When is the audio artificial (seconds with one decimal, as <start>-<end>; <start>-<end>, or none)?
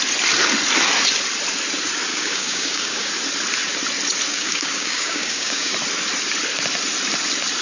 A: 2.1-3.1; 4.3-5.7